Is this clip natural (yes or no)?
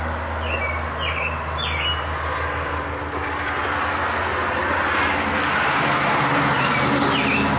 yes